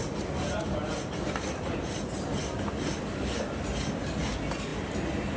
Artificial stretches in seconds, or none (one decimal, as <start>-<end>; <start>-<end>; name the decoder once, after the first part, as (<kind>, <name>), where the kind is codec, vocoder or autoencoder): none